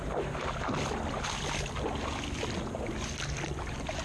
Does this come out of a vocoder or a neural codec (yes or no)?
no